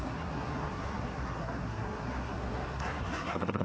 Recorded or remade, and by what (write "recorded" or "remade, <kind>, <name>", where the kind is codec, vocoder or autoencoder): remade, codec, SNAC